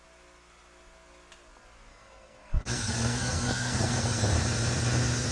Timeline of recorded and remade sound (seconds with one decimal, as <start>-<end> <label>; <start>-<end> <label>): 0.0-1.9 recorded; 1.9-4.2 remade; 4.2-5.3 recorded